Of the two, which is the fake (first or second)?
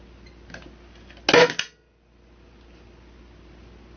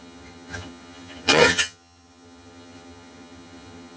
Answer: second